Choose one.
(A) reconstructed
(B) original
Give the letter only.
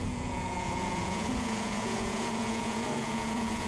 A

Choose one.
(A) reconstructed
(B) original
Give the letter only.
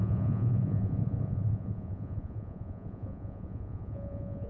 A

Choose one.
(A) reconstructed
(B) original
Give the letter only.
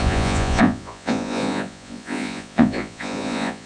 A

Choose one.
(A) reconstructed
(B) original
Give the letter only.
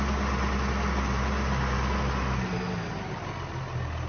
B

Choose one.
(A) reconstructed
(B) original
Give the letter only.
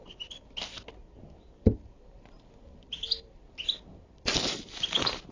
B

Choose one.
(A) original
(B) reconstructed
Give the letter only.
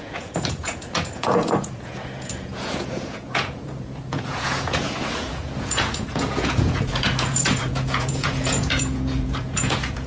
B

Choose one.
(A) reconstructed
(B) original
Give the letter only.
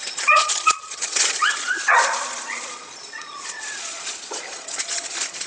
A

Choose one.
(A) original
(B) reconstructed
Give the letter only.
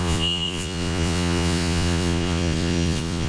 B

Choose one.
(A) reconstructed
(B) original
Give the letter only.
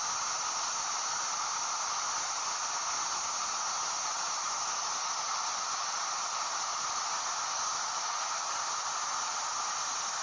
B